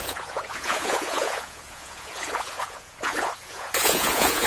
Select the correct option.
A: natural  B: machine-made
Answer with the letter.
B